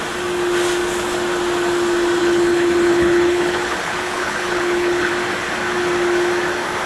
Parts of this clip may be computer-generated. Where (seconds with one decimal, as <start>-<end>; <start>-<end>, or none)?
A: 2.2-5.1